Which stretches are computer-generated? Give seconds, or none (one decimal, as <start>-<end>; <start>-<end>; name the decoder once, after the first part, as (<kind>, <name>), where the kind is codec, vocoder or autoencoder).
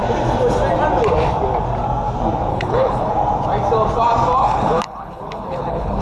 2.5-3.1 (codec, HILCodec); 4.4-6.0